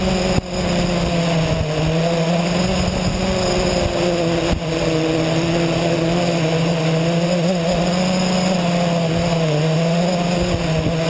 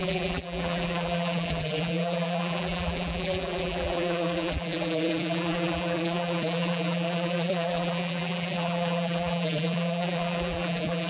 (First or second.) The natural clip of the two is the first